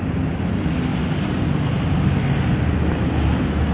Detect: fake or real real